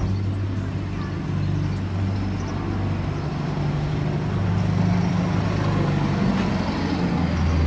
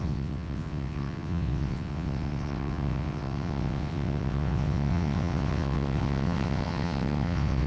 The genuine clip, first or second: first